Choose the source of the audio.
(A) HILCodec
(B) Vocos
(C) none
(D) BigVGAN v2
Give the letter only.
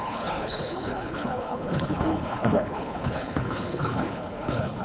A